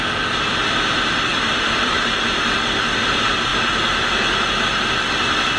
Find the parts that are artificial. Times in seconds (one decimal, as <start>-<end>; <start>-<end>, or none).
1.3-1.9